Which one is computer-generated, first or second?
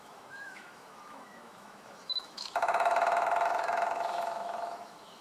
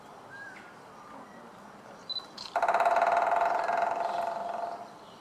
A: first